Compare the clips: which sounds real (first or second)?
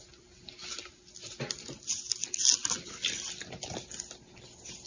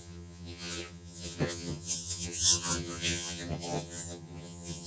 first